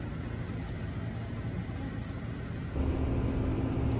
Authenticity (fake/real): real